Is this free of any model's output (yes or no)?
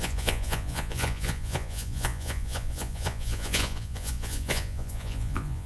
no